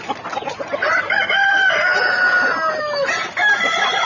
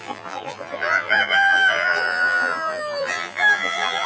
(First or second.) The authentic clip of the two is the first